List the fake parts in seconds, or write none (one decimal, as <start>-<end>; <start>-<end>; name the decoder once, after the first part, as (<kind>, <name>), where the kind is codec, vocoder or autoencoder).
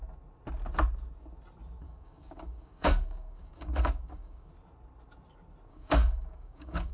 1.8-4.5 (codec, DAC); 5.7-6.9